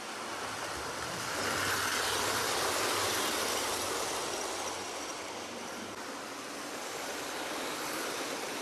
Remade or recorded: recorded